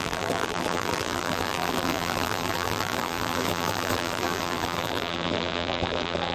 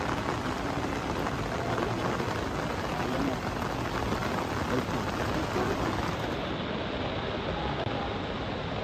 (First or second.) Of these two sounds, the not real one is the first